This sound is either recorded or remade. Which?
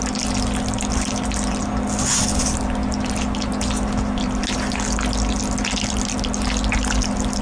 recorded